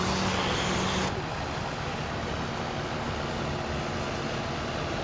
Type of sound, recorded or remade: recorded